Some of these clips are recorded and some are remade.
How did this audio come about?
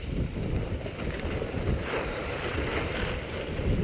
recorded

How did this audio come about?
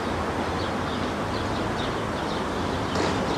recorded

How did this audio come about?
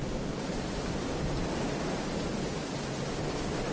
recorded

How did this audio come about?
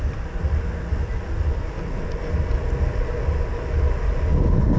recorded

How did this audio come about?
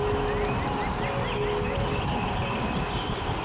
recorded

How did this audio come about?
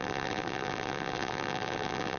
remade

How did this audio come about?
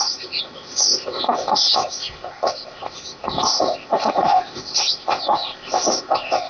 remade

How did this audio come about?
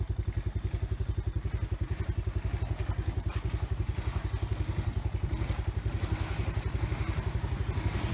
recorded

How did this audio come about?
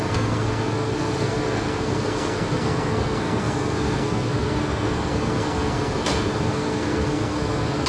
remade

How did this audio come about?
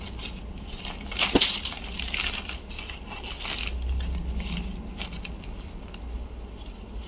recorded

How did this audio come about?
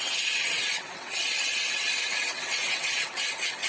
remade